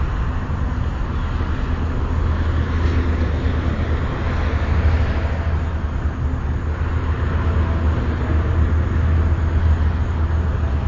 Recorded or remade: recorded